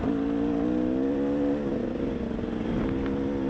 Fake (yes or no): no